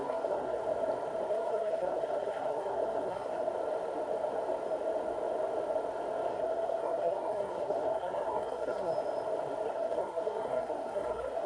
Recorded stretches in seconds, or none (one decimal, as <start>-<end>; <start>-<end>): 0.6-1.3; 3.5-6.3; 8.9-9.7